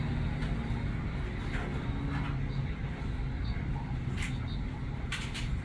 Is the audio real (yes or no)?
yes